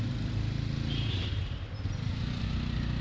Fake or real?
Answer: real